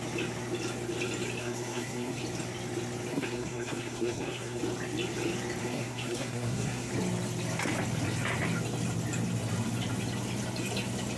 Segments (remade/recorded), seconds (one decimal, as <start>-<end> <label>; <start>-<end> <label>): 0.0-1.4 recorded; 1.4-2.2 remade; 2.2-3.1 recorded; 3.1-4.6 remade; 4.6-5.6 recorded; 5.6-6.9 remade; 6.9-11.2 recorded